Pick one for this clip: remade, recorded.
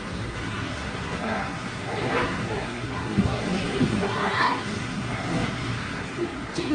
remade